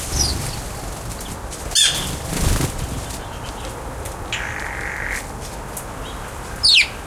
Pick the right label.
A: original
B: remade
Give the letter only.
A